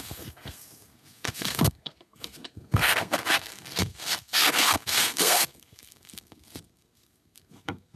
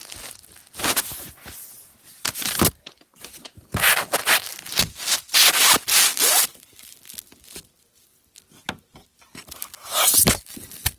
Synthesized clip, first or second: first